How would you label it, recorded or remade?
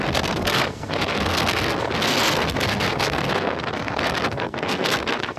remade